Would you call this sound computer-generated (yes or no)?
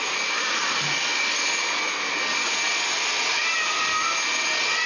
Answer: no